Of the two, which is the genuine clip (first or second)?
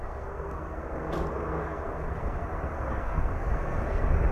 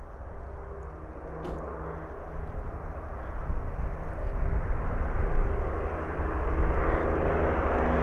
second